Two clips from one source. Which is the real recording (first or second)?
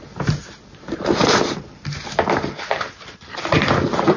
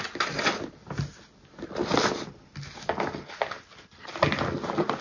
second